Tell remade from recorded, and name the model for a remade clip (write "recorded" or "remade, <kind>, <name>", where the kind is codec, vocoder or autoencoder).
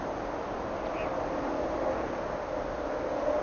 recorded